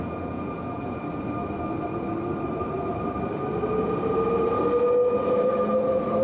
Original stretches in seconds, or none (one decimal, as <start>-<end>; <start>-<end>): 1.0-6.2